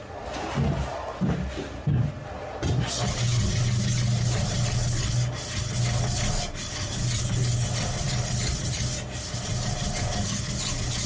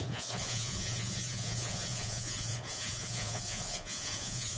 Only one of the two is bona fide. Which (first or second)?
first